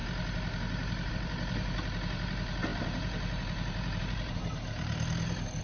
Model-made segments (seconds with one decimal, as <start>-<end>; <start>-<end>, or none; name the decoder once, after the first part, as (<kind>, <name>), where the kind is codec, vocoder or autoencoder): 0.0-5.6 (vocoder, BigVGAN v2)